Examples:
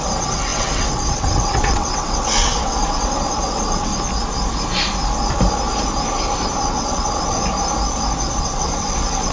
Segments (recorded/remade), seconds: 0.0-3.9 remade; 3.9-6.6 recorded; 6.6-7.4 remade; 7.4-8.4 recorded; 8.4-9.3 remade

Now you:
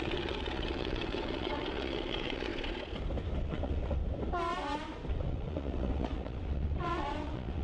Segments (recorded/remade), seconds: 0.0-2.5 remade; 2.5-3.4 recorded; 3.4-4.0 remade; 4.0-5.1 recorded; 5.1-7.6 remade